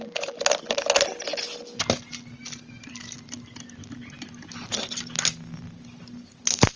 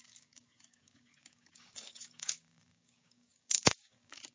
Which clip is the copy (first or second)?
second